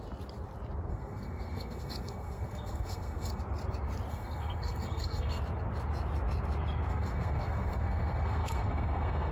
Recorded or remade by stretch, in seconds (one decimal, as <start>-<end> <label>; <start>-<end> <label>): 0.0-0.9 recorded; 0.9-3.4 remade; 3.4-4.1 recorded; 4.1-5.4 remade; 5.4-6.9 recorded; 6.9-9.3 remade